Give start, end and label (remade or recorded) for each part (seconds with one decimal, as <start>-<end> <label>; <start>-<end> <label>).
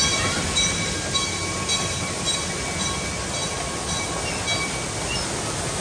0.0-5.8 recorded